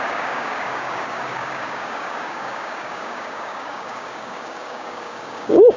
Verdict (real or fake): fake